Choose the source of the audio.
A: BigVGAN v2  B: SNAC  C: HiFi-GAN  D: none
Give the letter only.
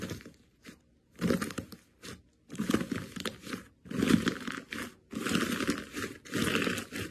D